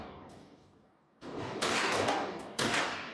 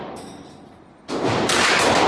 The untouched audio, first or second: second